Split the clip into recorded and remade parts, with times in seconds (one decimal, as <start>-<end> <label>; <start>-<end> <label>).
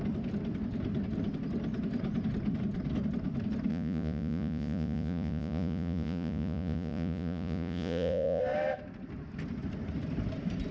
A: 0.0-3.7 recorded; 3.7-8.4 remade; 8.4-10.7 recorded